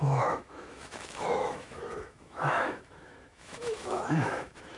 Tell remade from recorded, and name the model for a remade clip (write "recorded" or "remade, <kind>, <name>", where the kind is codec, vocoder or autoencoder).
remade, autoencoder, DAC-VAE